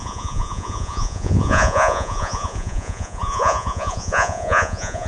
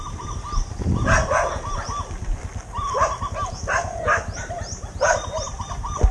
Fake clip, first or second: first